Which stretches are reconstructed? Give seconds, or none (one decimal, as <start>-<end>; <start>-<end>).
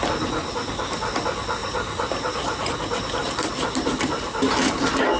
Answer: 1.6-2.7; 3.2-4.8